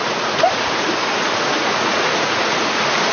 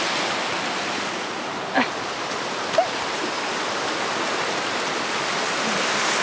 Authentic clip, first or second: second